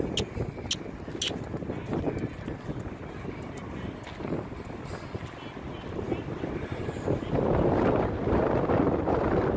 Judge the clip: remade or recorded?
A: recorded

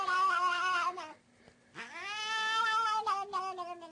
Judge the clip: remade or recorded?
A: recorded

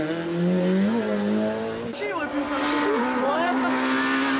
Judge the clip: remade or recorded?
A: recorded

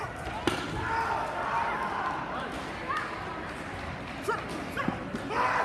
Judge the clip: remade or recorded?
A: recorded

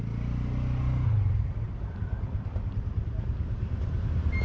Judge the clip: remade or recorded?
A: recorded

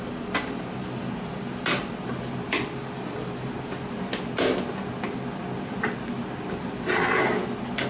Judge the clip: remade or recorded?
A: recorded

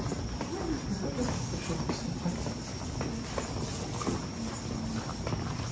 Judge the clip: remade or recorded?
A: recorded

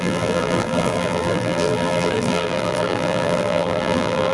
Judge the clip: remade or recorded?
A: remade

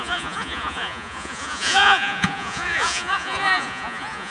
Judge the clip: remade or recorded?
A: remade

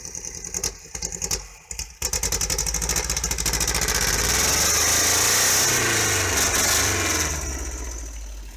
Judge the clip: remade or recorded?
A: recorded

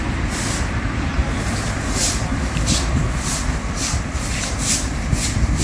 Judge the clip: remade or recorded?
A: remade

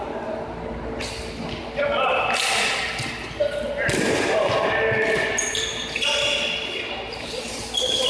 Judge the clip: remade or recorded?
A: recorded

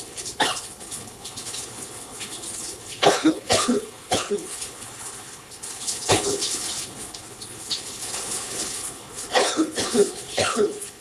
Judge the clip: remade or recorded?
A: remade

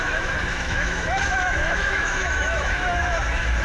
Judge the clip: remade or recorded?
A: remade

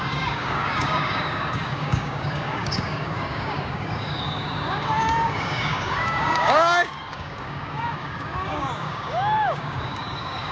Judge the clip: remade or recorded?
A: remade